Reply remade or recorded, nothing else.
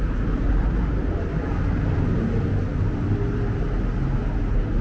recorded